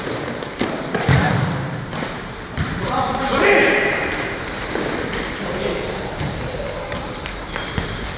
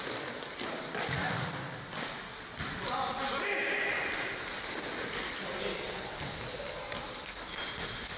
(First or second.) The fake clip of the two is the first